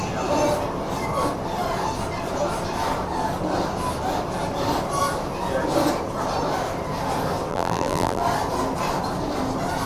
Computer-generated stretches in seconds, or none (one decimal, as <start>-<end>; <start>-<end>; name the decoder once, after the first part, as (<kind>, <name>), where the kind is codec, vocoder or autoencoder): 7.5-8.2 (vocoder, BigVGAN v2)